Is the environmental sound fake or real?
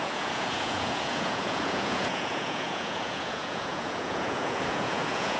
fake